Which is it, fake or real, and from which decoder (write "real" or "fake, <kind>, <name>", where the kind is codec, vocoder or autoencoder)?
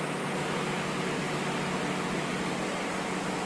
real